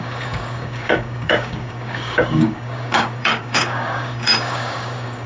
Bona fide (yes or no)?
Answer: no